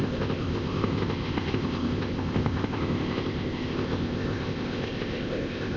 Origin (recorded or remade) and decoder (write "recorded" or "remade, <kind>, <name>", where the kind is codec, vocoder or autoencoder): remade, codec, ZipCodec